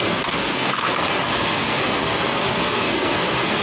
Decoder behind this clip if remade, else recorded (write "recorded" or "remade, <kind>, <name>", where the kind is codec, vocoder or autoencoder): remade, codec, SNAC